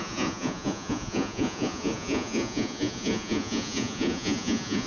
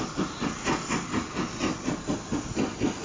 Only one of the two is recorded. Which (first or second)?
second